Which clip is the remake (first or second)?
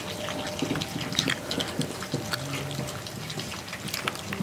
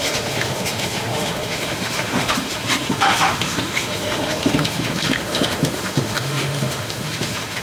second